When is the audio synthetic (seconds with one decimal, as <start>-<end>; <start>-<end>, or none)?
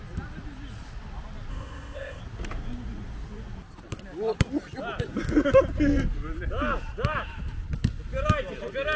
1.5-2.2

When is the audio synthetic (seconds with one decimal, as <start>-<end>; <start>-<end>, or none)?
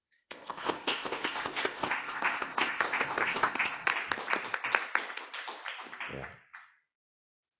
0.0-3.9